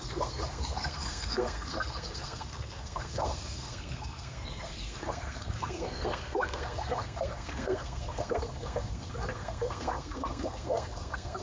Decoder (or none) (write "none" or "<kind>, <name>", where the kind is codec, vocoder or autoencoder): codec, SNAC